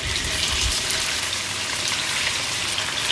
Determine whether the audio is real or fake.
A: fake